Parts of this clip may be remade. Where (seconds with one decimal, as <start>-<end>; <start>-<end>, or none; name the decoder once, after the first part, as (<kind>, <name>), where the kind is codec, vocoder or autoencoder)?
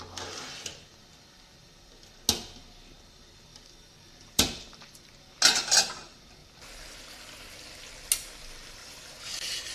3.5-5.1 (vocoder, BigVGAN v2); 6.4-7.0; 8.8-9.7